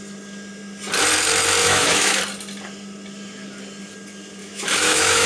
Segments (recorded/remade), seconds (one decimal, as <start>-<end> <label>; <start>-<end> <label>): 0.0-1.6 recorded; 1.6-2.2 remade; 2.2-4.4 recorded; 4.4-5.3 remade